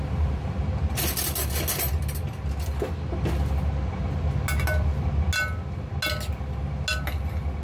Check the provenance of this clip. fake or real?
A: real